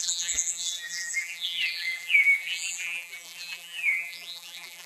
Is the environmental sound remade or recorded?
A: remade